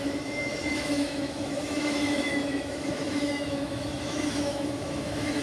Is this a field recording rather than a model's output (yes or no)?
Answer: no